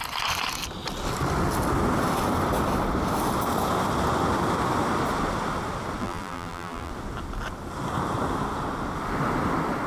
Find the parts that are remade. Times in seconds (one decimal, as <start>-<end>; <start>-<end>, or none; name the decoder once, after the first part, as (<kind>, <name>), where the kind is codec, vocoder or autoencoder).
6.0-6.9 (vocoder, BigVGAN v2)